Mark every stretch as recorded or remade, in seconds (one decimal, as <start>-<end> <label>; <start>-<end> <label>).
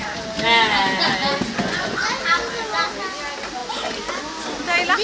0.0-1.5 recorded; 1.5-2.2 remade; 2.2-5.0 recorded